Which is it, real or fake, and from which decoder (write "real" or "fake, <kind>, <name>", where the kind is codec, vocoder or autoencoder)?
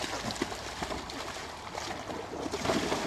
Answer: real